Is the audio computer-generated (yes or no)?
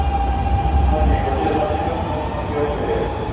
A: no